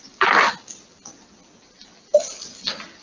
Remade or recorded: recorded